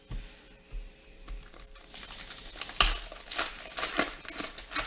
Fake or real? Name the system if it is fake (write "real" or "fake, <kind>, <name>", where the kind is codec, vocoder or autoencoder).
real